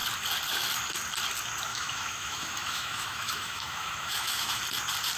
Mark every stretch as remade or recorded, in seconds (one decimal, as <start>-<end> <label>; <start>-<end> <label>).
0.0-1.7 recorded; 1.7-4.6 remade; 4.6-5.2 recorded